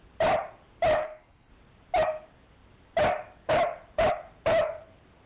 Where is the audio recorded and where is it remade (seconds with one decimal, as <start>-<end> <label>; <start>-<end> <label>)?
0.0-1.0 recorded; 1.0-1.5 remade; 1.5-5.3 recorded